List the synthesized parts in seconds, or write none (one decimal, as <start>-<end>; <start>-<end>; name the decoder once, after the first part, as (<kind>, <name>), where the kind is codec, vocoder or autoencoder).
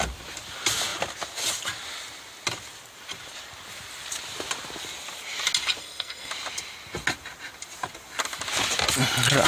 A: 5.8-6.3 (codec, SNAC)